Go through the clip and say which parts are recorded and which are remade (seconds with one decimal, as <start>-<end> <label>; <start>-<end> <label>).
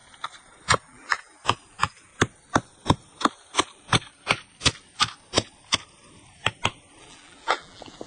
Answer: 0.0-0.8 recorded; 0.8-2.1 remade; 2.1-7.0 recorded; 7.0-8.1 remade